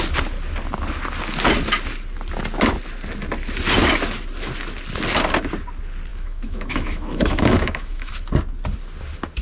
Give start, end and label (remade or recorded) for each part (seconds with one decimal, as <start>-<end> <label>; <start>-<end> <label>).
0.0-6.1 recorded; 6.1-8.1 remade; 8.1-9.4 recorded